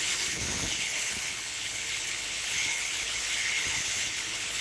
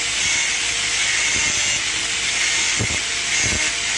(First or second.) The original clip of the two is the second